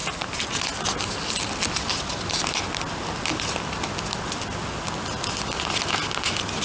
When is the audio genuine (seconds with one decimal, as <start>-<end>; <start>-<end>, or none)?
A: 0.0-6.6